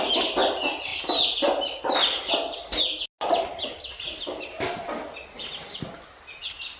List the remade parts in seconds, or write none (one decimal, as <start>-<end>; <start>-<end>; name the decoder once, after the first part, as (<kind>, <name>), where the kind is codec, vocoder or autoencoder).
none